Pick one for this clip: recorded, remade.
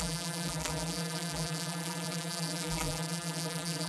remade